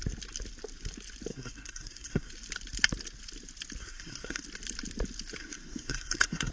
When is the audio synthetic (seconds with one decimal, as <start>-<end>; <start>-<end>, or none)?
1.3-2.3; 3.8-4.4; 5.4-6.5